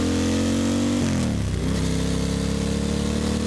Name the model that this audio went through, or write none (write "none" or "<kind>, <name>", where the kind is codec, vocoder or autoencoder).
none